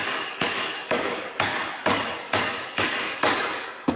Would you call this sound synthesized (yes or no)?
yes